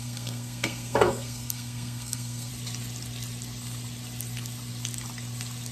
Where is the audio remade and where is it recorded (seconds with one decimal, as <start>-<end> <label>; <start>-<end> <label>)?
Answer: 0.0-2.5 remade; 2.5-5.7 recorded